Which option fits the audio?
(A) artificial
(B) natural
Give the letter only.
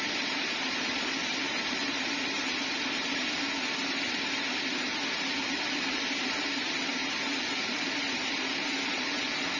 A